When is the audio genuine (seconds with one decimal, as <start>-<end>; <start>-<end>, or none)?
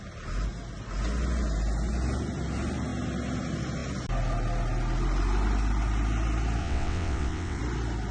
0.0-6.6; 7.6-8.1